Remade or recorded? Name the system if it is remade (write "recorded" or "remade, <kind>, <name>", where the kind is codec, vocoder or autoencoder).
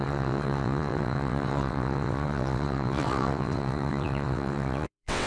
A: remade, vocoder, WaveNeXt